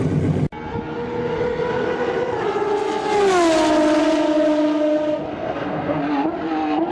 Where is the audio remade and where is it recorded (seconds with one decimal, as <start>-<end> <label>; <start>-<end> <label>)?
0.0-5.3 recorded; 5.3-6.0 remade; 6.0-6.9 recorded